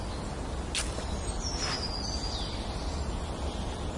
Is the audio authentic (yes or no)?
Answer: yes